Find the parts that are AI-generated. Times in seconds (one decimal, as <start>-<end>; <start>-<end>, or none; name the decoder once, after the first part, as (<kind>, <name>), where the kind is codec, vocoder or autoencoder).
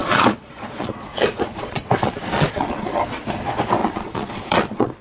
0.0-3.0 (vocoder, Vocos); 3.8-5.0